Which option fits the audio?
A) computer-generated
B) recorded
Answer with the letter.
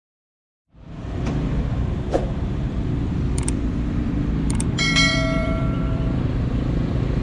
A